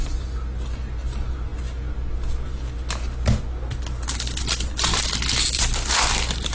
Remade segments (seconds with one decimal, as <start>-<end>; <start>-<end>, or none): none